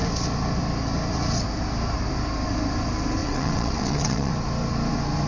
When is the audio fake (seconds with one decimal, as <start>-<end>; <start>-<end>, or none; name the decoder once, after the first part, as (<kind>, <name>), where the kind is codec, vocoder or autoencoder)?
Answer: 3.2-4.3 (vocoder, WaveNeXt)